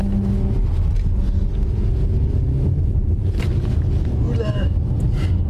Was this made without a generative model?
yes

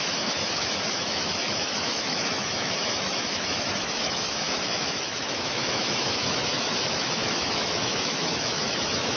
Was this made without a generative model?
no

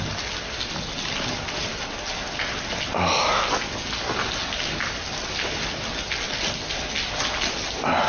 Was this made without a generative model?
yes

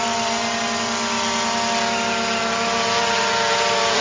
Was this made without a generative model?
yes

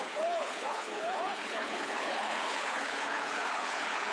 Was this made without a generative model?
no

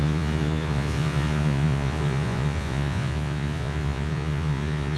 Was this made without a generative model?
no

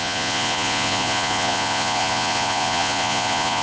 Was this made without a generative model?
no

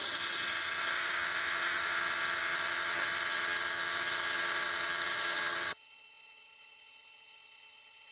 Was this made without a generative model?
no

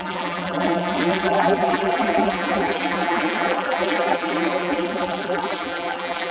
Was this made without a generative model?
no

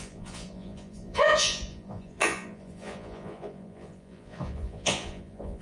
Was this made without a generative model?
no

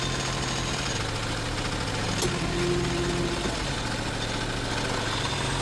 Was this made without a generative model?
yes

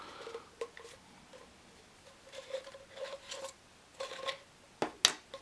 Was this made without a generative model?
yes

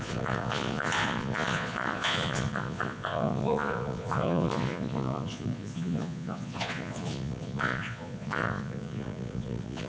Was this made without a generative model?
no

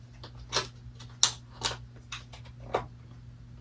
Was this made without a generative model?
yes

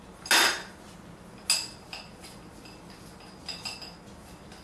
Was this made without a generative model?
yes